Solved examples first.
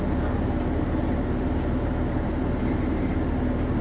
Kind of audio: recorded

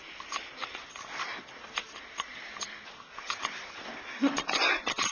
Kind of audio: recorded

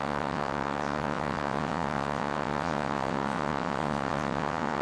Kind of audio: remade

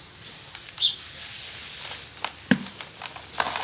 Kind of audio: recorded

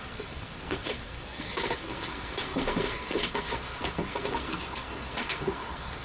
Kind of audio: remade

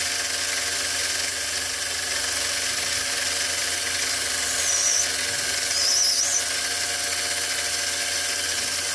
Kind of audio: recorded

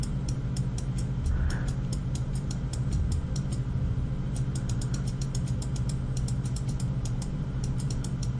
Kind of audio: remade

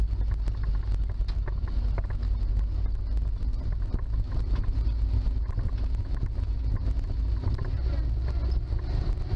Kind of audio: recorded